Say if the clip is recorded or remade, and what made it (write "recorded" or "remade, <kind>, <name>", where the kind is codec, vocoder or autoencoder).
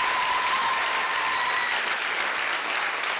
recorded